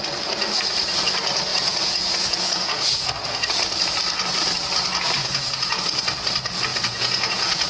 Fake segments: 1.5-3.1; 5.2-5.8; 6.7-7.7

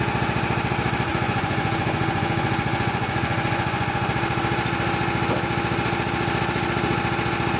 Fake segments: 1.1-4.1

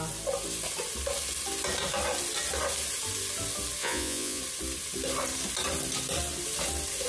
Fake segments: 3.8-4.4

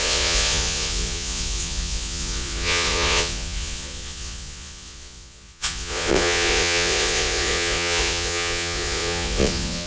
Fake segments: 0.0-9.9

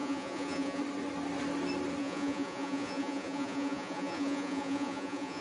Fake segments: 0.0-0.8; 2.0-5.4